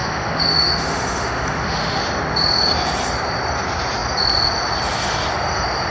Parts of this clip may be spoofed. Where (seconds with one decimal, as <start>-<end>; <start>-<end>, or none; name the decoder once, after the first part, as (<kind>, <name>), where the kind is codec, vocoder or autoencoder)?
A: 0.0-2.0 (autoencoder, DAC-VAE)